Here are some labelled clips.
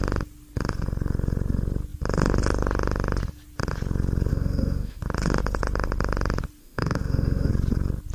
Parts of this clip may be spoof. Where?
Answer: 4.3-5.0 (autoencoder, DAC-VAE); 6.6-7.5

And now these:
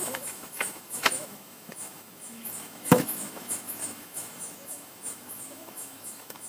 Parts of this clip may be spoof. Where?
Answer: 0.0-6.5 (autoencoder, DAC-VAE)